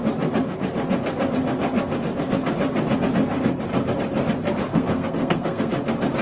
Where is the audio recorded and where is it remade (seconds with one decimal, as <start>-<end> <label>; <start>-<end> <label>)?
0.0-4.7 recorded; 4.7-5.7 remade; 5.7-6.2 recorded